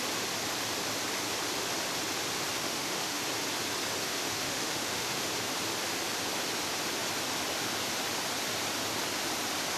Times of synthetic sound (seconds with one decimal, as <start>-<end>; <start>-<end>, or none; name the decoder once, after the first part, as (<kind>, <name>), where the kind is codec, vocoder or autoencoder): 2.6-3.2 (autoencoder, DAC-VAE); 4.1-5.3